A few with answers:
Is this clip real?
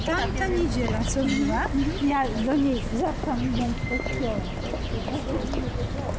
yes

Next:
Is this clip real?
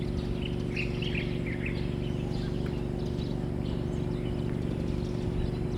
yes